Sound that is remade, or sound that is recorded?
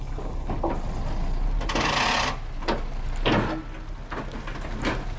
recorded